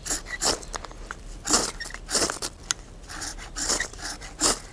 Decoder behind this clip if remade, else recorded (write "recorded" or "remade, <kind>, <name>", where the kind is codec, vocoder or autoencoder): recorded